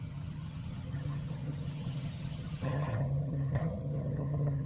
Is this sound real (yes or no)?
no